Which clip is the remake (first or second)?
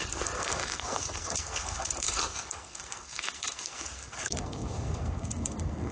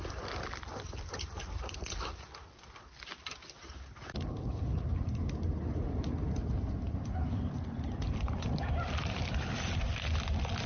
first